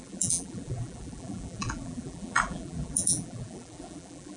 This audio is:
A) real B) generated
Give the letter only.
B